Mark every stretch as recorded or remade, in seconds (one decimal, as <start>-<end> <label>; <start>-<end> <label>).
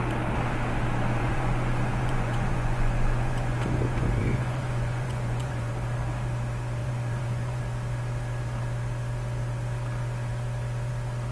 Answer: 0.0-1.2 recorded; 1.2-5.7 remade; 5.7-6.8 recorded; 6.8-7.6 remade; 7.6-11.3 recorded